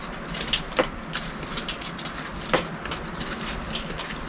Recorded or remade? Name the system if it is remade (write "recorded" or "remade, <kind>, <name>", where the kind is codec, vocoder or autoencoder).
recorded